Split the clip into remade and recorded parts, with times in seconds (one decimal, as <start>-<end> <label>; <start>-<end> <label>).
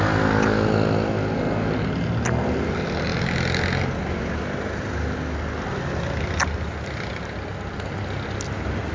0.0-8.9 recorded